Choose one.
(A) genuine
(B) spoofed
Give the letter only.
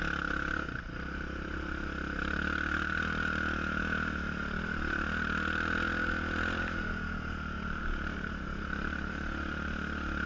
A